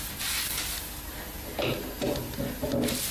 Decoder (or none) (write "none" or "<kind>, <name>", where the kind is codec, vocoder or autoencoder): none